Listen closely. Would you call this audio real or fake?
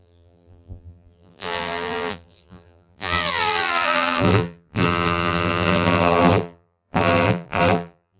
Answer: fake